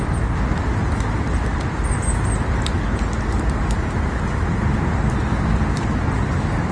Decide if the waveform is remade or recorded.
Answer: recorded